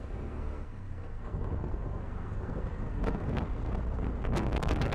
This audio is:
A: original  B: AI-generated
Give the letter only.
B